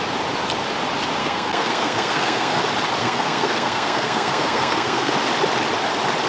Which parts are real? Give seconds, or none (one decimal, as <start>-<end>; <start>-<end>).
0.0-1.2; 2.6-3.0; 5.1-6.3